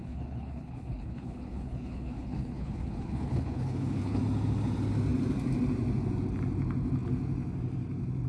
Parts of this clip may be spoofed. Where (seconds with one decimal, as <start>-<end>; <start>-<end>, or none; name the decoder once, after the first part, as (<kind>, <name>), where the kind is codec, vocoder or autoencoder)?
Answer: 0.0-4.2 (codec, HILCodec)